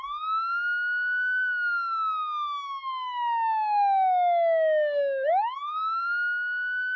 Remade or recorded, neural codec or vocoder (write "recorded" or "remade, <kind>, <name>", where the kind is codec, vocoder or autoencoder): recorded